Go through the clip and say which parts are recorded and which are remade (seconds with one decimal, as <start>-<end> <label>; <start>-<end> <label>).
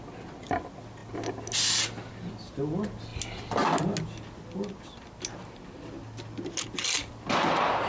0.0-7.9 recorded